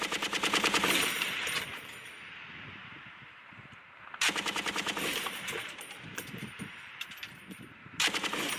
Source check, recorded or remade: remade